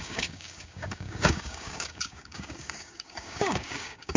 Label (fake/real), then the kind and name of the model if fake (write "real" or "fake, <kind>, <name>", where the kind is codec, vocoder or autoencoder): fake, codec, DAC